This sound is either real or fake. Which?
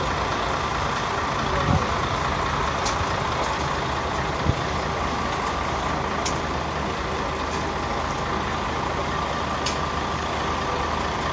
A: real